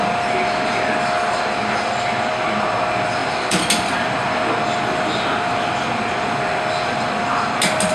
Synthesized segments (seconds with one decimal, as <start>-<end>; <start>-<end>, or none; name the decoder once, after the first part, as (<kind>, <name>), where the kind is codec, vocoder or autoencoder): none